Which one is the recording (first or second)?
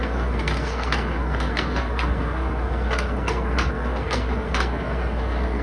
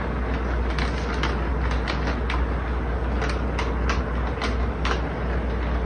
second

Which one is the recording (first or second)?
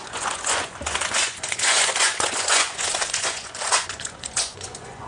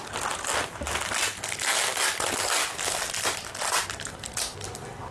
second